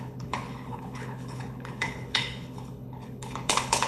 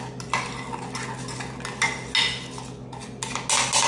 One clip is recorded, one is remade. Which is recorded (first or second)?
second